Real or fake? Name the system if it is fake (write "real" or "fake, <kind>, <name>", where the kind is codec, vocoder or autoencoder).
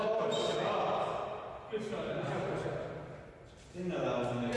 real